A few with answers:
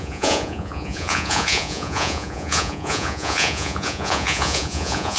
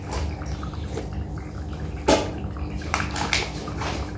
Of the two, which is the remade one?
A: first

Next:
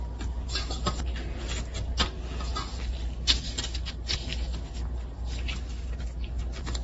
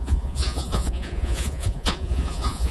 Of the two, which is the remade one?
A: second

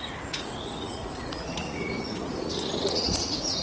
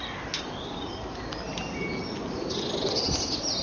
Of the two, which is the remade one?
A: first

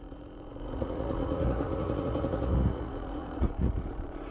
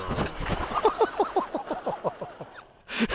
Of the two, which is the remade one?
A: first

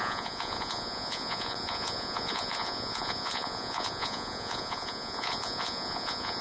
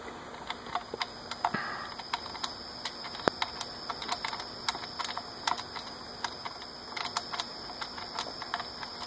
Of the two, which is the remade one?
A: first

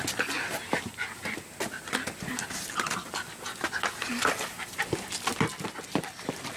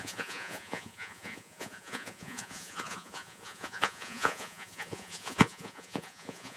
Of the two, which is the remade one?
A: second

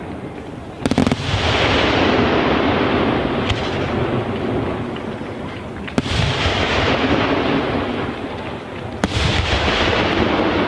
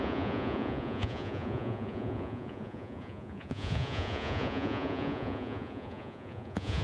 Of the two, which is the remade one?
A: second